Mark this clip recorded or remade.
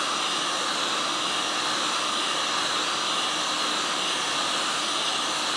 recorded